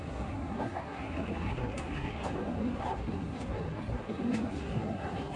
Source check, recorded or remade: remade